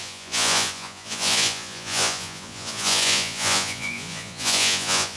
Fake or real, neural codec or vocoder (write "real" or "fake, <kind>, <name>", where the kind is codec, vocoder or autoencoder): fake, vocoder, Vocos